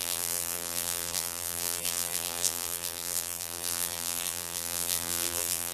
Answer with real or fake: fake